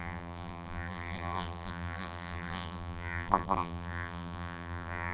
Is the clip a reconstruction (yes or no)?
yes